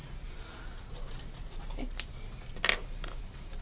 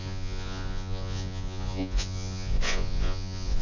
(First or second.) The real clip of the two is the first